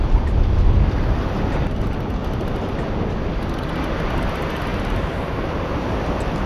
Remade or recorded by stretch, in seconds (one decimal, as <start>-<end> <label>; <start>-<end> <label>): 0.0-4.7 recorded; 4.7-5.9 remade; 5.9-6.5 recorded